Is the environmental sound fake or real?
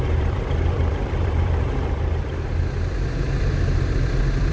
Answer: fake